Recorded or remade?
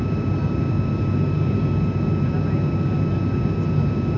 recorded